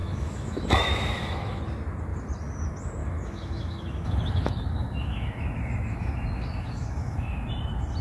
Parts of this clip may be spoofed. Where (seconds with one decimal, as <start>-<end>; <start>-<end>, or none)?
0.0-1.6; 3.0-7.5

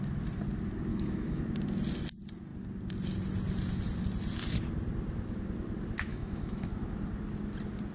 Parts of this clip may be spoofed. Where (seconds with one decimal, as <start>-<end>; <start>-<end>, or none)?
0.9-1.4; 6.1-6.7